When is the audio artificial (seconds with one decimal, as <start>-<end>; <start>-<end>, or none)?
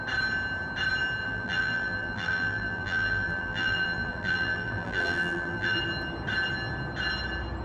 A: 1.2-5.8